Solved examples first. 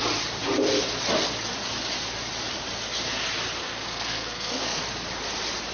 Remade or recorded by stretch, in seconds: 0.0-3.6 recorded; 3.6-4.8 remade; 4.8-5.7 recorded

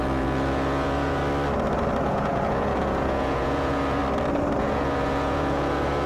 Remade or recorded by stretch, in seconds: 0.0-1.2 remade; 1.2-2.0 recorded; 2.0-4.0 remade; 4.0-4.6 recorded; 4.6-6.1 remade

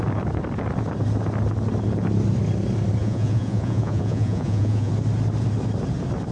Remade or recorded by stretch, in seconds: 0.0-3.0 recorded; 3.0-4.9 remade; 4.9-6.3 recorded